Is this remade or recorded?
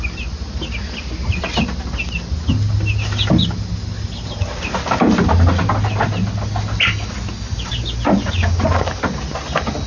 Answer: recorded